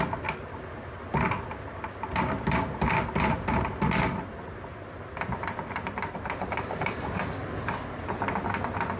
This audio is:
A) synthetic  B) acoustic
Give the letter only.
B